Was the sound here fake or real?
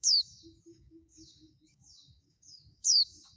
fake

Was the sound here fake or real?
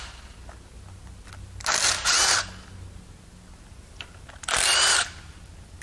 real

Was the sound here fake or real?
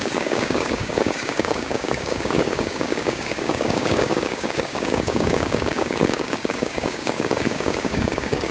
fake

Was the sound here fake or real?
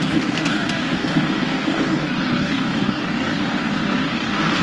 fake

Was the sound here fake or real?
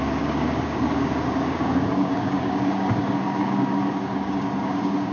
fake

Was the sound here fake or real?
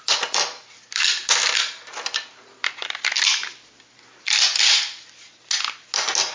real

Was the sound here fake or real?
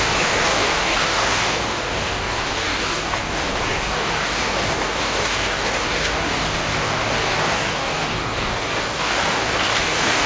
fake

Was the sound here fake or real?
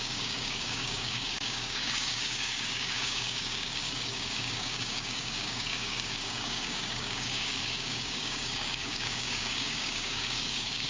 fake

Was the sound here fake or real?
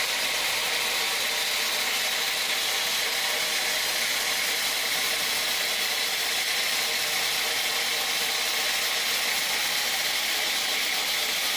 real